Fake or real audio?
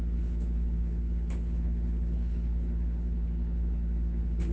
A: fake